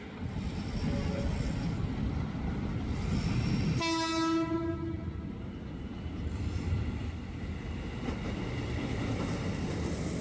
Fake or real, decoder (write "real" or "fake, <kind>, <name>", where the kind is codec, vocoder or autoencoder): real